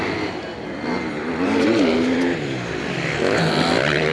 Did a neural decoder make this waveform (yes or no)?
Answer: no